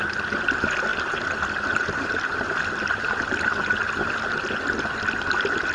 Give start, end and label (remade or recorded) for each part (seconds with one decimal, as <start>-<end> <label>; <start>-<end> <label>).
0.0-0.9 recorded; 0.9-4.1 remade; 4.1-5.7 recorded